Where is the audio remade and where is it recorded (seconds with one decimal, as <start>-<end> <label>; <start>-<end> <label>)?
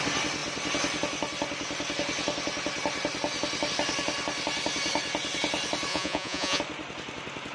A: 0.0-5.9 recorded; 5.9-6.6 remade; 6.6-7.5 recorded